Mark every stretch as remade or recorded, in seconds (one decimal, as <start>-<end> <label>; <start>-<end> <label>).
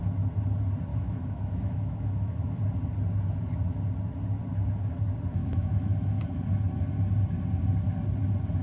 0.0-0.9 recorded; 0.9-2.6 remade; 2.6-5.4 recorded; 5.4-6.2 remade; 6.2-8.6 recorded